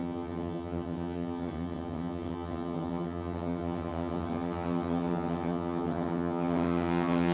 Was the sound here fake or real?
fake